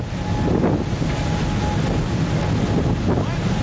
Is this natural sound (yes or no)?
yes